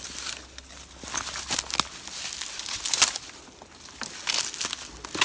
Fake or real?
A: real